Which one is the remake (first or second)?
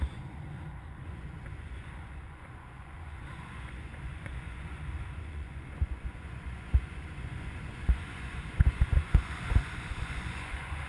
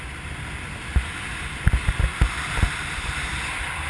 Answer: first